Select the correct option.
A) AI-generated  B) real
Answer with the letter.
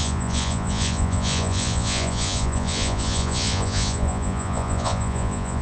A